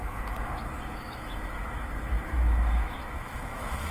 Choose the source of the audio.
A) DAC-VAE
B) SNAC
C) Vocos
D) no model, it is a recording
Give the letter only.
A